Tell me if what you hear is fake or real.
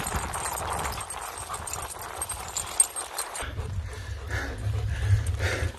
real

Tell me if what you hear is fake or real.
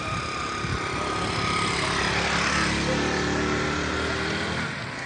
real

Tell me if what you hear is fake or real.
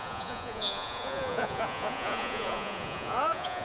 fake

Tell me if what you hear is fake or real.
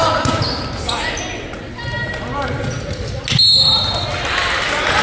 real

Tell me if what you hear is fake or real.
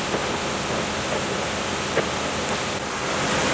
real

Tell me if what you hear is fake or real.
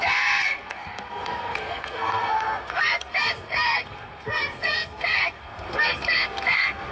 fake